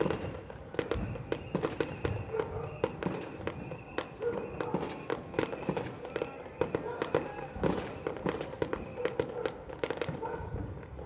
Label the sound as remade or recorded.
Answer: recorded